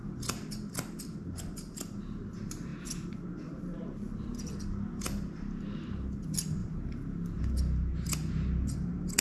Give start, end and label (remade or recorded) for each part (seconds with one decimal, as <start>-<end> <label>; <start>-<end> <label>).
0.0-9.2 recorded